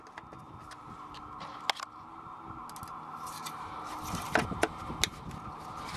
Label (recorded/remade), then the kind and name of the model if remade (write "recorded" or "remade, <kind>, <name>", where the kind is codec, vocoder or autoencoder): recorded